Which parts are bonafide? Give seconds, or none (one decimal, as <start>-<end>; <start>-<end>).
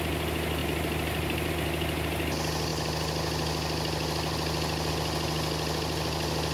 0.0-0.6; 1.5-6.5